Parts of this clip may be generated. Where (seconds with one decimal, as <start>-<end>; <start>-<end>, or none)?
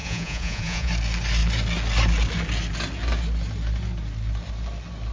0.0-0.9